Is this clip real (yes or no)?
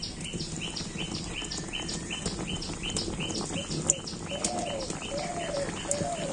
yes